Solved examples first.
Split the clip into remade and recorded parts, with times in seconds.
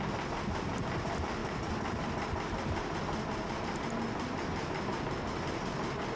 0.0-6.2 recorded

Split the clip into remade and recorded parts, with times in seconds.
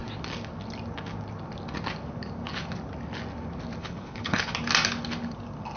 0.0-3.8 recorded; 3.8-4.5 remade; 4.5-5.8 recorded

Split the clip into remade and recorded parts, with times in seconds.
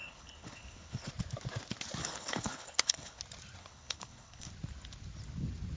0.0-1.1 remade; 1.1-2.0 recorded; 2.0-3.2 remade; 3.2-3.6 recorded; 3.6-4.5 remade; 4.5-5.8 recorded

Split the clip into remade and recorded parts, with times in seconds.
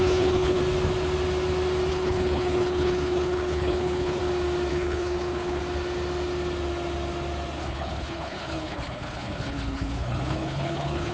0.0-0.6 remade; 0.6-1.9 recorded; 1.9-4.2 remade; 4.2-4.7 recorded; 4.7-5.6 remade; 5.6-7.6 recorded; 7.6-11.1 remade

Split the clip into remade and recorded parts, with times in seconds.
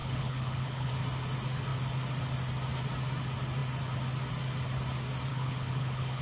0.0-0.9 remade; 0.9-5.3 recorded; 5.3-6.2 remade